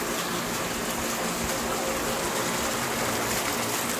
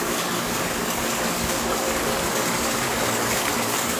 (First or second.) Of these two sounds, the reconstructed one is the second